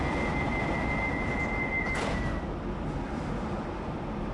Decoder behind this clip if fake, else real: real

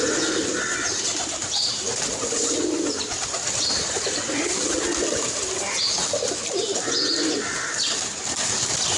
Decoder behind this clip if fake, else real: real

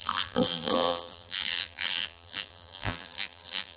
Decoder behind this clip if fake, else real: fake, vocoder, BigVGAN v2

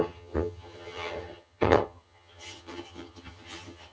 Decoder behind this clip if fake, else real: fake, vocoder, HiFi-GAN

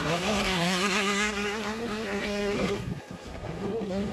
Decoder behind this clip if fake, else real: fake, codec, SNAC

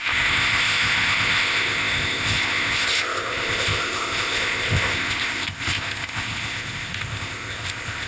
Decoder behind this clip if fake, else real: fake, codec, ZipCodec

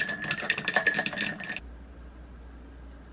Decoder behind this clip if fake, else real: real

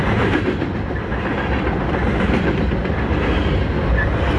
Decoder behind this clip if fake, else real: real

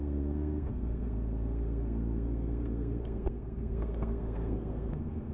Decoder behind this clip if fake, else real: fake, codec, SNAC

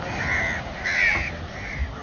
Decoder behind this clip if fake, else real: real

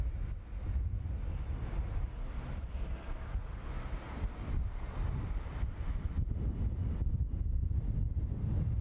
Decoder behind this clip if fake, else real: real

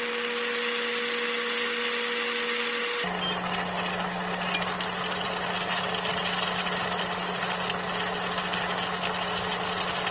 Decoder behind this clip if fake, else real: real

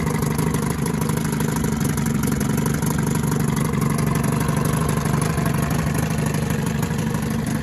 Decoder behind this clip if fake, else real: real